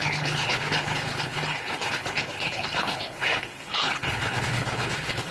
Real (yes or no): no